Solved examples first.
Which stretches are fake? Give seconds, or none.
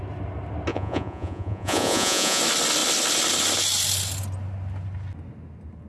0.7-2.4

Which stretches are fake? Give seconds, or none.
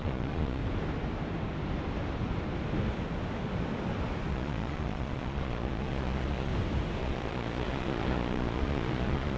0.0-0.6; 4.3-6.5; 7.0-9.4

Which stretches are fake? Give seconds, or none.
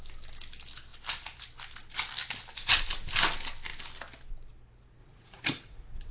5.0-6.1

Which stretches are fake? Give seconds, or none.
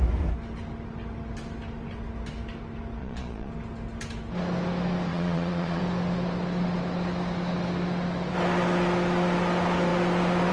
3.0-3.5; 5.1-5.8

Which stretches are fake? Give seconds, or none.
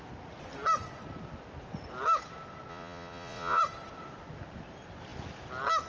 2.7-3.6